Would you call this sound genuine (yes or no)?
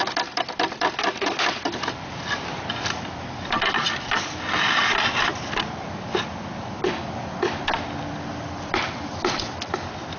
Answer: yes